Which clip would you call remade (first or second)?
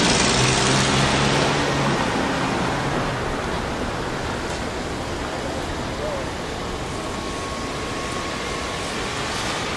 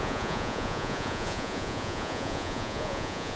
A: second